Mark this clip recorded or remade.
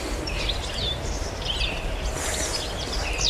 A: recorded